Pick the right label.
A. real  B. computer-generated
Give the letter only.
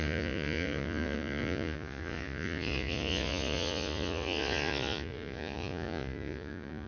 B